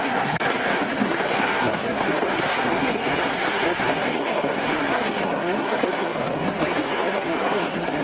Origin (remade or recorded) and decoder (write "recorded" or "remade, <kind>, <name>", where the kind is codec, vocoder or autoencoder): remade, codec, SNAC